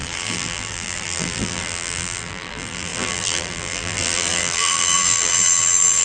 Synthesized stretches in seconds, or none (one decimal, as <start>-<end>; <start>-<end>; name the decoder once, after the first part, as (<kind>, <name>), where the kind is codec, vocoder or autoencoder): 0.0-6.0 (vocoder, BigVGAN v2)